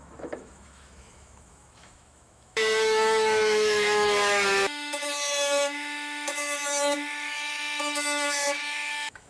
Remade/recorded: remade